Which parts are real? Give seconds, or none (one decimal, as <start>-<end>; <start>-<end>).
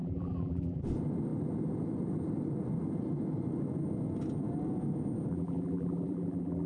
0.8-5.3